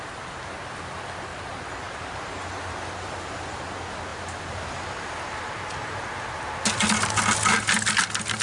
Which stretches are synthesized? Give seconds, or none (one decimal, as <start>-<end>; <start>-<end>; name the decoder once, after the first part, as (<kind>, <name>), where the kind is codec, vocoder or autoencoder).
1.8-2.5 (vocoder, BigVGAN v2); 4.1-6.5